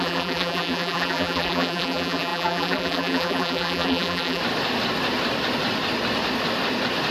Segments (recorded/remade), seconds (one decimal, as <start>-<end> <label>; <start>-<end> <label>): 0.0-4.4 remade; 4.4-7.1 recorded